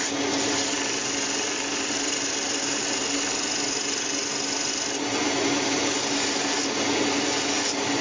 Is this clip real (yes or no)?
yes